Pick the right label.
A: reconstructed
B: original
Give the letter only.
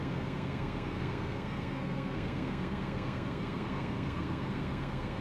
A